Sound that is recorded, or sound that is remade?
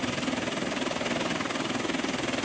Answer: recorded